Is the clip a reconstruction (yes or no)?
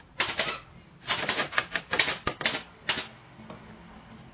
no